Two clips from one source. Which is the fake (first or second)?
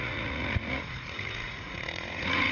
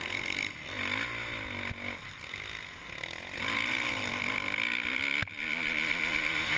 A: first